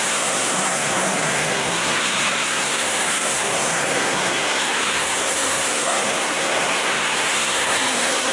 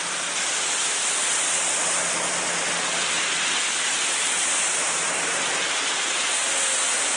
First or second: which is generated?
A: first